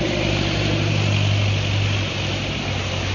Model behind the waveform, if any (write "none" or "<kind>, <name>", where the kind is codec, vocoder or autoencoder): none